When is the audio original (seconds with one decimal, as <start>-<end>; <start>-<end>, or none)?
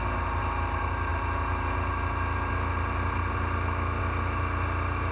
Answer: 0.0-5.1